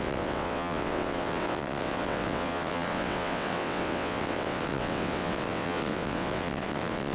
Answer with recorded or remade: remade